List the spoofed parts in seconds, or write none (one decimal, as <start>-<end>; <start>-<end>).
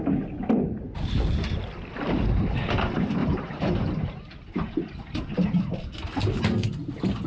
3.2-5.8